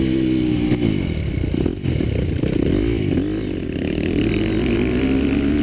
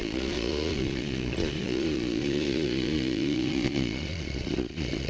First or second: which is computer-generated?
second